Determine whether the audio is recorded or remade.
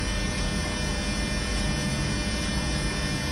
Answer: remade